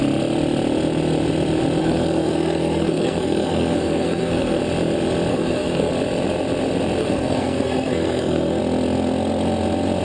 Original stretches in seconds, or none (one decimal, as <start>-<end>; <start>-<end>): 0.0-1.8; 4.6-5.3; 5.9-7.0; 8.6-10.0